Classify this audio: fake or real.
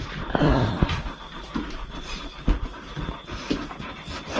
real